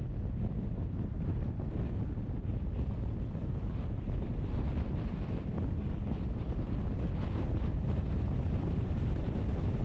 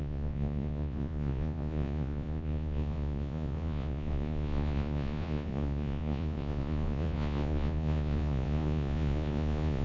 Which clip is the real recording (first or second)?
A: first